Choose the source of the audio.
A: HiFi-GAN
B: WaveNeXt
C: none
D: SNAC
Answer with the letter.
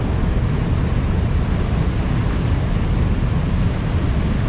C